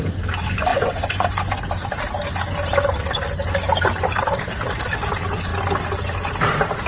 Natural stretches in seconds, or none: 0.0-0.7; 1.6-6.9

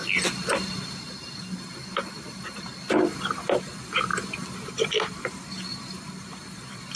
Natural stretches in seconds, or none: 0.0-7.0

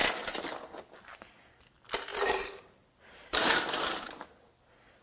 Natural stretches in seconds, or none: 0.0-2.1; 4.1-5.0

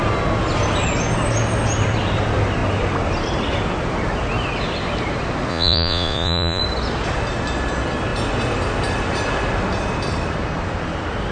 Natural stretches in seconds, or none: 0.0-5.5; 6.6-11.3